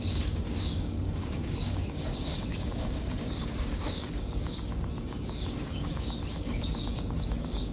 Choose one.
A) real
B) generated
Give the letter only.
B